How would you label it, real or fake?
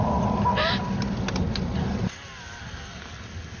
real